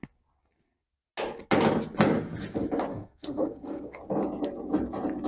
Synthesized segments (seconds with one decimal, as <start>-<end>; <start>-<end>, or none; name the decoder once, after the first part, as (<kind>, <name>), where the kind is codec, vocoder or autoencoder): 2.9-4.0 (codec, SNAC)